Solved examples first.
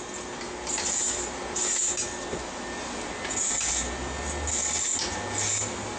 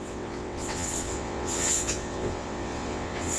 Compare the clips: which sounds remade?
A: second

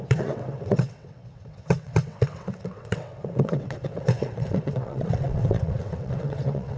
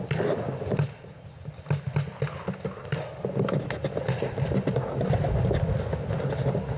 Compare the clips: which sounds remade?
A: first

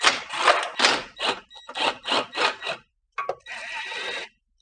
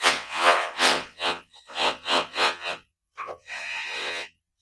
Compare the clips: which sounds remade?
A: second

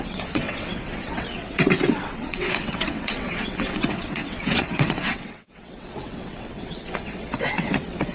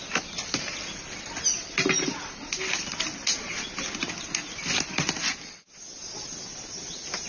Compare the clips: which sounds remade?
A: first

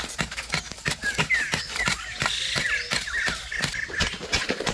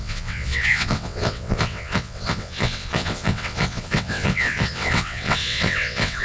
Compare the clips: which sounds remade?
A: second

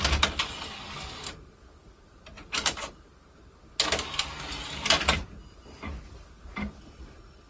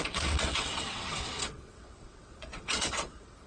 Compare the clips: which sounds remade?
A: second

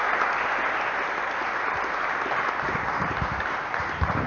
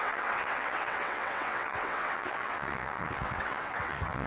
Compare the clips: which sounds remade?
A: second